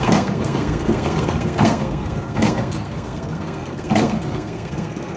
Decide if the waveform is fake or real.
fake